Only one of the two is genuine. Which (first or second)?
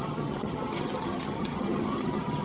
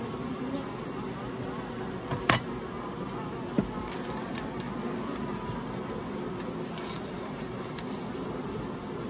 second